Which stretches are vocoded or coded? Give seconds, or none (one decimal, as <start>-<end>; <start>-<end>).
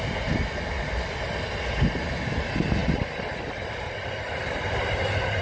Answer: none